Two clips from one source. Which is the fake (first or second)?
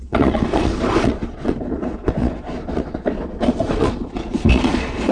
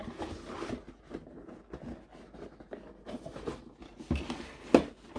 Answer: first